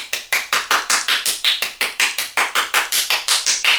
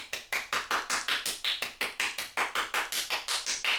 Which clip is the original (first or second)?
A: second